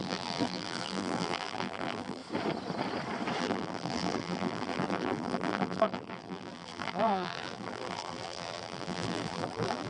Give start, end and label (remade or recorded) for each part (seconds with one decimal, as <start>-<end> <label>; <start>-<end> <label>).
0.0-2.2 remade; 2.2-3.4 recorded; 3.4-9.9 remade